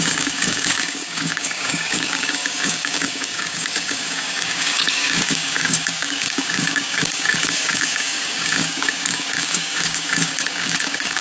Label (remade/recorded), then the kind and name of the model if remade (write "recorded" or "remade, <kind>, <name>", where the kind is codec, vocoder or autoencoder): remade, codec, DAC